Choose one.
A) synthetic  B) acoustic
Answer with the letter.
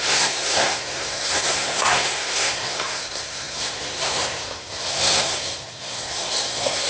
A